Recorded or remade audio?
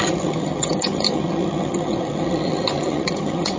remade